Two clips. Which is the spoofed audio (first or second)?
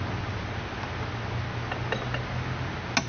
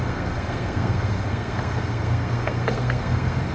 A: second